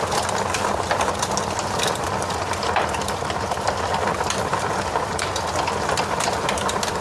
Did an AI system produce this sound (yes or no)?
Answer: no